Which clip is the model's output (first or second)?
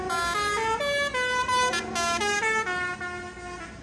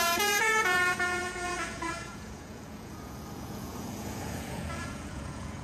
second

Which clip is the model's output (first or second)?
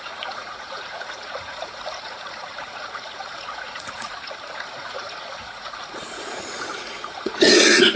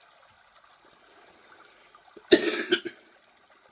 first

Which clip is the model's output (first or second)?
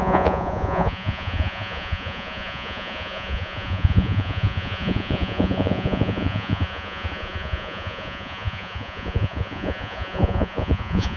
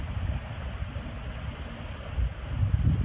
first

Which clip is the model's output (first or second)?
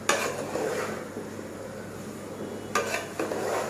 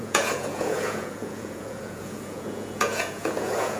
second